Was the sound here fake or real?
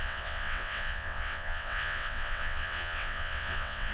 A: fake